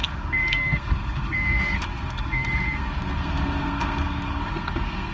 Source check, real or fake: fake